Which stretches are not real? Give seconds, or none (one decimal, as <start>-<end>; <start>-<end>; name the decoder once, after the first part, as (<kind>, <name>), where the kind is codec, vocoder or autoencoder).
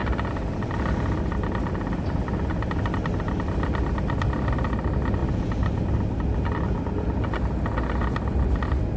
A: none